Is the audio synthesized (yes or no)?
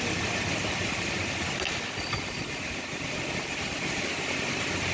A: no